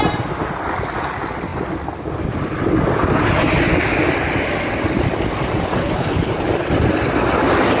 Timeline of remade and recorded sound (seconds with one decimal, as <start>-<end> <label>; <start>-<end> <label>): 0.0-5.8 recorded; 5.8-6.3 remade; 6.3-7.8 recorded